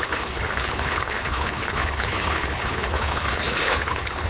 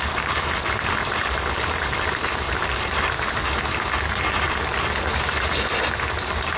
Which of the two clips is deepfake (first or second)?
first